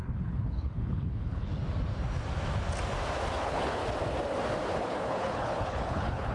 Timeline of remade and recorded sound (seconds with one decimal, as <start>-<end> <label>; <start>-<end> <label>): 0.0-1.5 remade; 1.5-3.4 recorded; 3.4-3.8 remade; 3.8-4.8 recorded; 4.8-6.3 remade